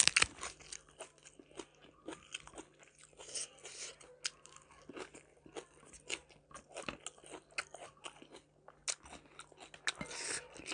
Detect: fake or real real